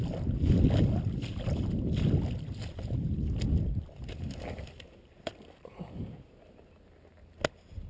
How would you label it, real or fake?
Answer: real